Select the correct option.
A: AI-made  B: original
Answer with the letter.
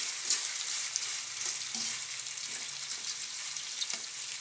B